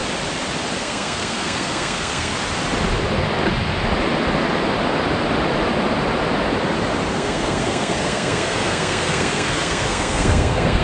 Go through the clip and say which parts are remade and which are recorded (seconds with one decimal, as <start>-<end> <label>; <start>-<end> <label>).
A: 0.0-0.8 recorded; 0.8-2.3 remade; 2.3-7.1 recorded; 7.1-10.8 remade